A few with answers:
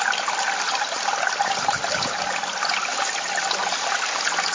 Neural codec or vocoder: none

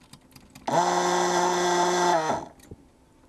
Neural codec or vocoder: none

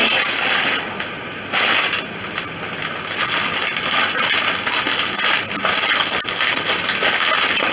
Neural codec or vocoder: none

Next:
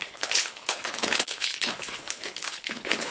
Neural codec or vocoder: codec, HILCodec